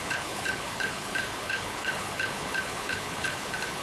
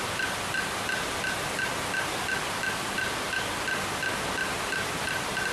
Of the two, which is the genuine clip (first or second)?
second